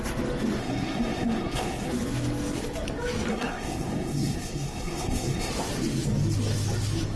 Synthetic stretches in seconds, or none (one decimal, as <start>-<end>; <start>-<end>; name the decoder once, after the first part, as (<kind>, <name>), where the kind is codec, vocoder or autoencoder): 0.6-1.9 (codec, SNAC); 3.3-5.5